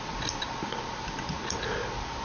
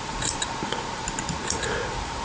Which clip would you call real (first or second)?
first